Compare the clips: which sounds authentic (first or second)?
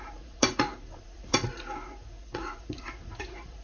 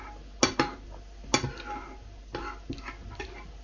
second